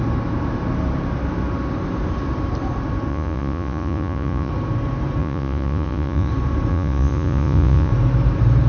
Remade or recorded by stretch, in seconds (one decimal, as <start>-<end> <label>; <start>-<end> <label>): 0.0-3.1 recorded; 3.1-4.5 remade; 4.5-5.2 recorded; 5.2-6.3 remade; 6.3-6.7 recorded; 6.7-7.9 remade; 7.9-8.7 recorded